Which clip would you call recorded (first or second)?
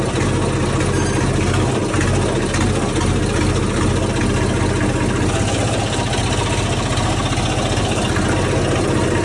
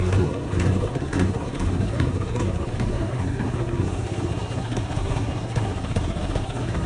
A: first